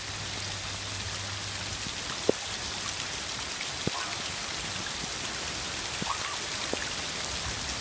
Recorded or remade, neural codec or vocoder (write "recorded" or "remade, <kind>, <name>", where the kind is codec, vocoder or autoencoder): recorded